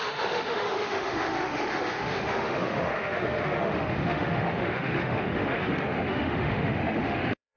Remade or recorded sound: remade